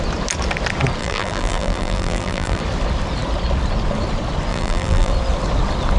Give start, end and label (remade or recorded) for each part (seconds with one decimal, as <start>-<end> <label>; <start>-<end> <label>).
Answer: 0.0-1.0 recorded; 1.0-2.6 remade; 2.6-4.5 recorded; 4.5-5.1 remade; 5.1-6.0 recorded